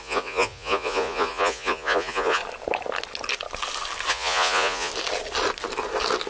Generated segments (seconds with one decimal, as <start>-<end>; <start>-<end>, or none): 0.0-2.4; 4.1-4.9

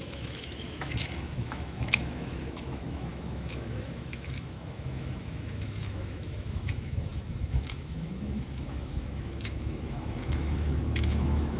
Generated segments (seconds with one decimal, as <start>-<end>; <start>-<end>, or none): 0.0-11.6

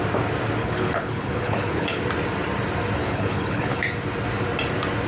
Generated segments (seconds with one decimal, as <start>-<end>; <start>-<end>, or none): 0.6-2.0; 3.0-3.8

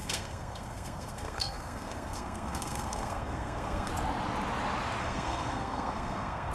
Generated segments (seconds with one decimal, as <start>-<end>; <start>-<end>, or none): 0.0-3.9; 5.0-6.5

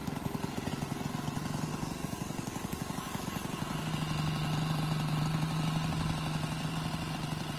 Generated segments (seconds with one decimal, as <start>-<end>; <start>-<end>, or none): 0.0-0.7; 1.7-3.9